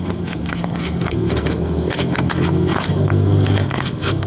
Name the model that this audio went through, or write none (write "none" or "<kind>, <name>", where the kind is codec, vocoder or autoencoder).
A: codec, SNAC